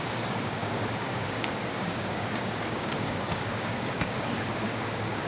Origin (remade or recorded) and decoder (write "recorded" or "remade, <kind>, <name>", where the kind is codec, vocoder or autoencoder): remade, codec, DAC